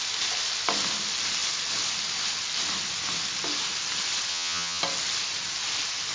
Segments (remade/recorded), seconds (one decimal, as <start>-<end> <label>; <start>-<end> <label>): 0.0-4.3 recorded; 4.3-4.8 remade; 4.8-6.1 recorded